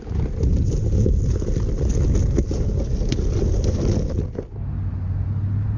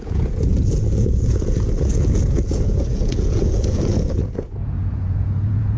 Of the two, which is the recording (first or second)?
first